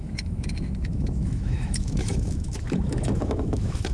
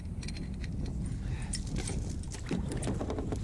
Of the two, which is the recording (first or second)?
second